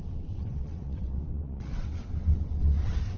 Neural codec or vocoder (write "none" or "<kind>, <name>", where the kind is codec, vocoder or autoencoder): vocoder, WaveNeXt